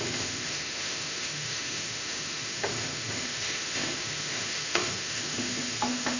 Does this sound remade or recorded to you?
remade